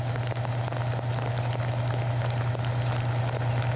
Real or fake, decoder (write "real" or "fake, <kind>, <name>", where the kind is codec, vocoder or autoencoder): real